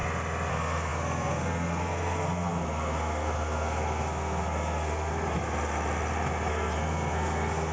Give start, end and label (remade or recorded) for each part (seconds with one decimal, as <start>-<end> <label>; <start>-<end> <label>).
0.0-0.5 recorded; 0.5-5.1 remade; 5.1-6.5 recorded; 6.5-7.7 remade